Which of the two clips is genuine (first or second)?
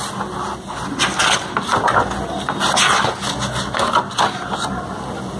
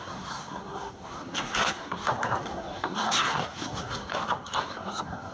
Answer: first